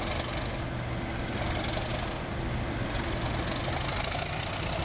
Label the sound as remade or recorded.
recorded